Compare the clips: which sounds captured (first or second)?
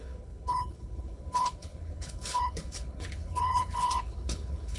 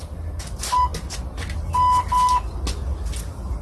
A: second